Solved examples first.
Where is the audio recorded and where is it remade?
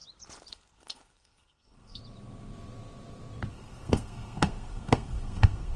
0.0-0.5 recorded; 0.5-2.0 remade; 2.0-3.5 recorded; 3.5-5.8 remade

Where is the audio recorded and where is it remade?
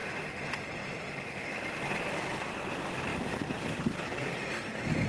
0.0-3.1 recorded; 3.1-4.3 remade; 4.3-5.1 recorded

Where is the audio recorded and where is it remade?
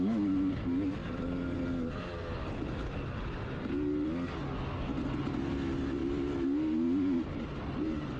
0.0-8.2 recorded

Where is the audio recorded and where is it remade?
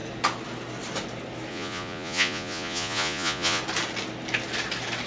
0.0-1.5 recorded; 1.5-3.6 remade; 3.6-5.1 recorded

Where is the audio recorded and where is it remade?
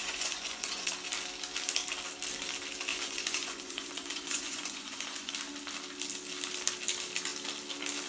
0.0-0.9 remade; 0.9-2.9 recorded; 2.9-5.3 remade; 5.3-8.1 recorded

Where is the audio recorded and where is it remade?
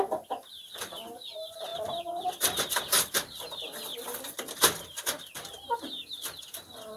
0.0-7.0 recorded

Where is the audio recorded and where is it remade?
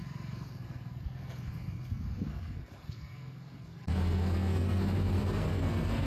0.0-6.1 remade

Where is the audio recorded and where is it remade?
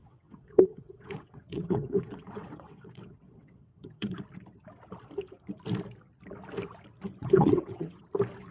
0.0-4.2 remade; 4.2-7.2 recorded; 7.2-8.0 remade; 8.0-8.5 recorded